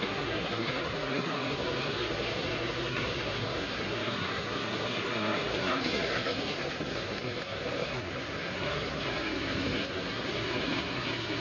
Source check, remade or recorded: remade